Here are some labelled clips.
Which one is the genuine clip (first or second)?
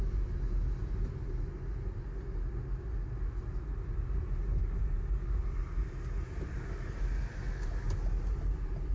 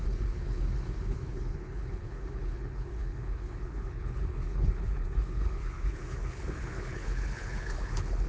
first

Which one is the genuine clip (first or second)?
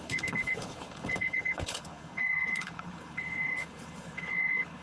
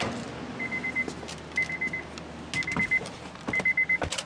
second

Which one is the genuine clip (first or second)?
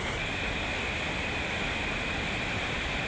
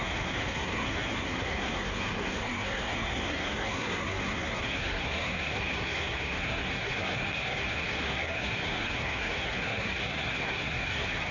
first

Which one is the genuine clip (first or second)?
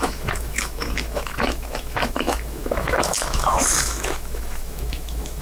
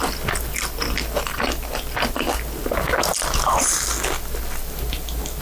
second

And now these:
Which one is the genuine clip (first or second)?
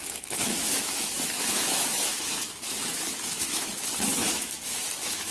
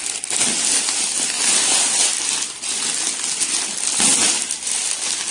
second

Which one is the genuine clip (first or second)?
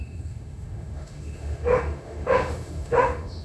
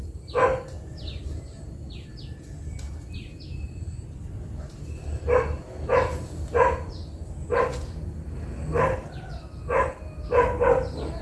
second